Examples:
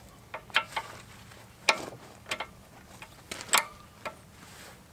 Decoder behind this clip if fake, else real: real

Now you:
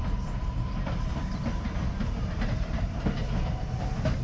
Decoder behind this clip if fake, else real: real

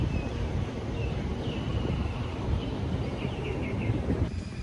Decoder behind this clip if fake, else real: fake, vocoder, BigVGAN v2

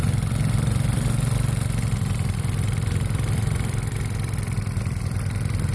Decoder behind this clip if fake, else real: real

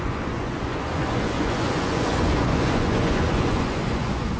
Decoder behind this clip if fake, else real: fake, vocoder, Vocos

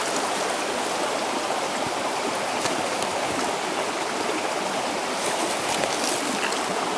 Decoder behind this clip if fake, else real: real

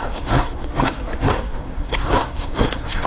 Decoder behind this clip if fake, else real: fake, codec, SNAC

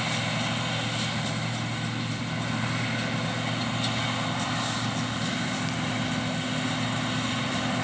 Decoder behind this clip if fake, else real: real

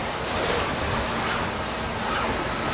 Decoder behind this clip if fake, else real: real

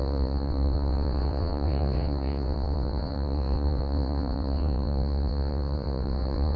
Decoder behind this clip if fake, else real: fake, vocoder, WaveNeXt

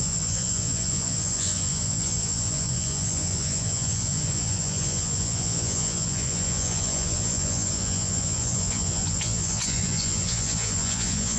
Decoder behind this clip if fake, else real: fake, vocoder, Vocos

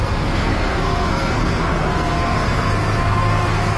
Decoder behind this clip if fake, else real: fake, codec, SNAC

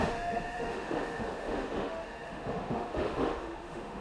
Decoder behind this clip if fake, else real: fake, autoencoder, DAC-VAE